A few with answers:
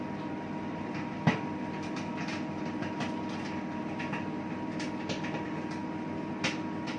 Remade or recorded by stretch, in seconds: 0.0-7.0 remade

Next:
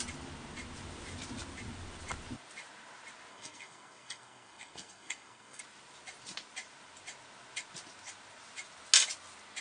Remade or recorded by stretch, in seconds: 0.0-3.3 recorded; 3.3-5.6 remade; 5.6-9.6 recorded

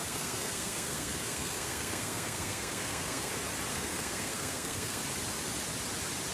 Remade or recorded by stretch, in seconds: 0.0-3.3 remade; 3.3-3.7 recorded; 3.7-5.0 remade; 5.0-6.3 recorded

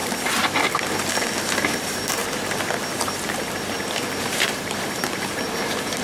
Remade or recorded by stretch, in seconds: 0.0-1.4 recorded; 1.4-2.2 remade; 2.2-4.2 recorded; 4.2-6.0 remade

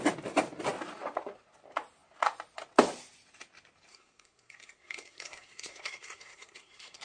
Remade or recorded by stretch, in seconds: 0.0-3.9 recorded; 3.9-7.0 remade